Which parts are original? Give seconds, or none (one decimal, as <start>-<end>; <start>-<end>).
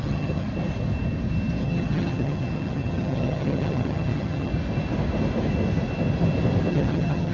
0.5-1.6; 4.5-6.7